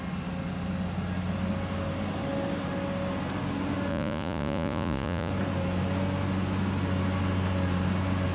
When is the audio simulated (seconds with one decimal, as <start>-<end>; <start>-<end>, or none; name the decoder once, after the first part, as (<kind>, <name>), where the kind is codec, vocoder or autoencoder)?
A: 3.9-5.3 (vocoder, Vocos)